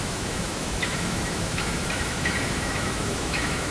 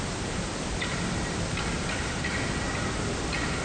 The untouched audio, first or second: second